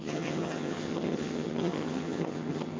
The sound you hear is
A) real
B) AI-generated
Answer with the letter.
B